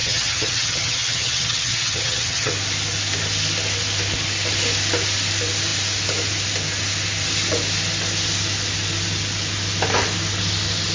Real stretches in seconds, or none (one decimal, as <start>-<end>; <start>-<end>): 2.5-10.9

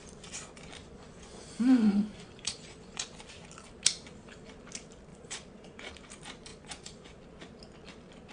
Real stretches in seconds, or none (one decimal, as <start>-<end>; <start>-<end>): 0.0-0.8; 3.2-5.1; 5.9-6.5; 7.2-8.3